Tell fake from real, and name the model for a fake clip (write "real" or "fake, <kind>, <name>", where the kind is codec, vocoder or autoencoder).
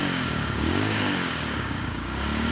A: fake, codec, DAC